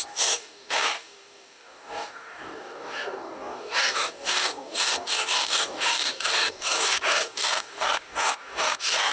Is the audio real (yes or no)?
no